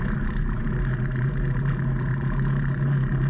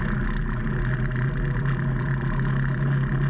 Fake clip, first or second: first